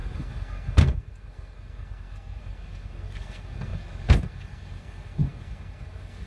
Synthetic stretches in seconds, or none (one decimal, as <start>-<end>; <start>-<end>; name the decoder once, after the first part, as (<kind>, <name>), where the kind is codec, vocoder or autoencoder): 0.0-6.3 (codec, SNAC)